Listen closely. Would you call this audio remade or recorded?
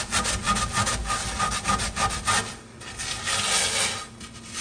recorded